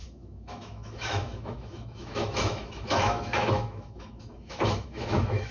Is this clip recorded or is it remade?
remade